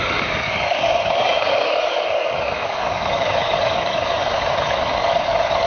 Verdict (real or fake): fake